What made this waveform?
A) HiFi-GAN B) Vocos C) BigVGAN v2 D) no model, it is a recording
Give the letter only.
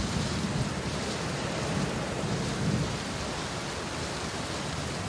D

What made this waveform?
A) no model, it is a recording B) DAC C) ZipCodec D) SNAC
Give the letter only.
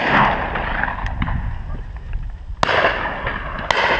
A